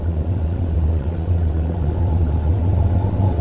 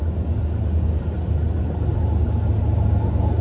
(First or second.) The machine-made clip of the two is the first